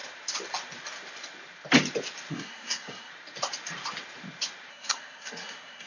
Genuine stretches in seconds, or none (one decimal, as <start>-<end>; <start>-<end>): 0.0-2.3; 3.1-4.7